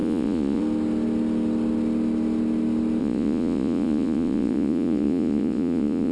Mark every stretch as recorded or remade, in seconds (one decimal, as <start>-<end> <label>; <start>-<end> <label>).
0.0-0.6 remade; 0.6-3.0 recorded; 3.0-6.1 remade